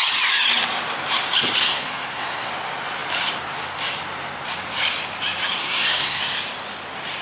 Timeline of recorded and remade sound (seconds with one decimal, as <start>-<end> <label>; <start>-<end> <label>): 0.0-1.6 recorded; 1.6-2.5 remade; 2.5-5.6 recorded; 5.6-6.2 remade; 6.2-7.2 recorded